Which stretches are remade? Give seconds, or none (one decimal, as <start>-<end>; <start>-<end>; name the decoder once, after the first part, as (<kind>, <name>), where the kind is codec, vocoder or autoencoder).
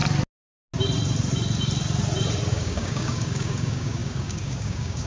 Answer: 2.5-5.1 (codec, DAC)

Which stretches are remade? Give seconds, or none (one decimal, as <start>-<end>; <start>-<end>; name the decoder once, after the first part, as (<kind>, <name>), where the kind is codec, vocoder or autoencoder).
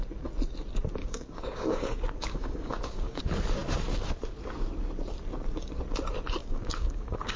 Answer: 1.0-3.2 (codec, DAC); 6.4-7.4